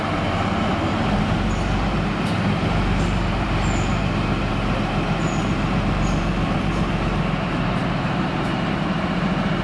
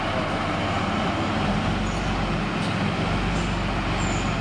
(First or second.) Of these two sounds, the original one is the second